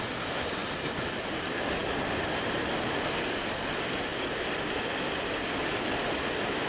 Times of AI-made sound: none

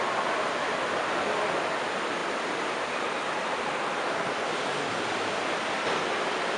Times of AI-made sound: 2.2-4.3 (vocoder, BigVGAN v2)

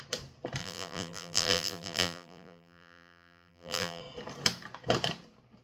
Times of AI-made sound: 0.6-4.0 (vocoder, BigVGAN v2)

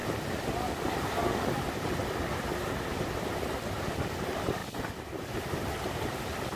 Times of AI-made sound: none

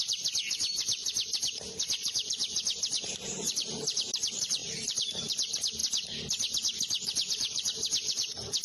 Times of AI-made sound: 0.0-5.8 (vocoder, BigVGAN v2); 7.3-8.6

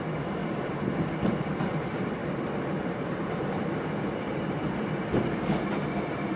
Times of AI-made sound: 0.4-1.6 (vocoder, BigVGAN v2); 2.2-5.5

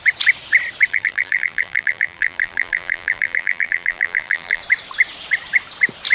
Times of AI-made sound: 0.9-4.6 (vocoder, BigVGAN v2)

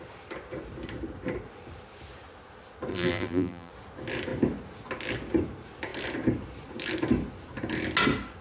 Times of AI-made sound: 2.9-3.7 (vocoder, BigVGAN v2)